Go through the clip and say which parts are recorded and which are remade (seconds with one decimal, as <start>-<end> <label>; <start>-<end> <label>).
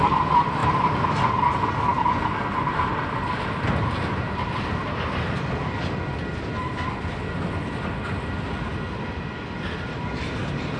0.0-10.8 recorded